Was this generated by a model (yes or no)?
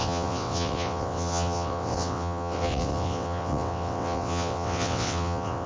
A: yes